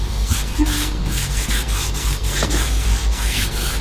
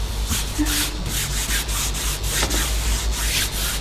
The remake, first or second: first